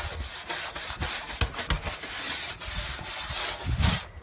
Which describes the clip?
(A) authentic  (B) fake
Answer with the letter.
A